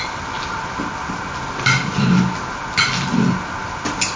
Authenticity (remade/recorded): recorded